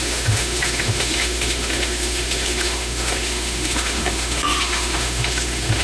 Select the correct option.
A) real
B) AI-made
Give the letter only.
B